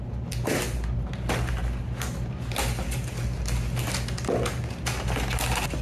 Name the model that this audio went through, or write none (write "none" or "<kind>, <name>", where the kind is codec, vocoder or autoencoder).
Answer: none